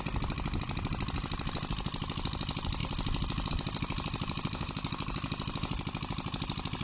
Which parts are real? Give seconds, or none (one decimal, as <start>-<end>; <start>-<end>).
0.0-6.8

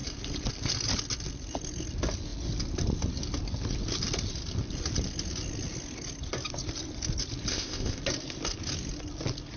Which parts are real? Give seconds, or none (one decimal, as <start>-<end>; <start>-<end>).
0.0-7.5; 8.0-9.6

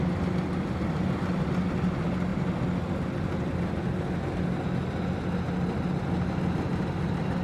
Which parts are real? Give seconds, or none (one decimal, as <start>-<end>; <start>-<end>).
0.0-7.4

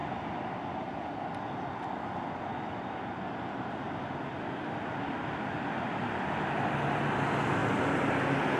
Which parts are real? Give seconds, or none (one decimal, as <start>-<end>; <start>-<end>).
0.0-8.6